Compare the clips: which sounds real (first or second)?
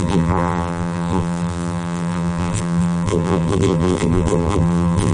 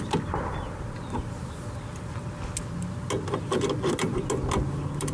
second